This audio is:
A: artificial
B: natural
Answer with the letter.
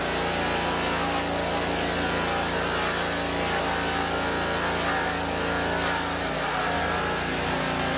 B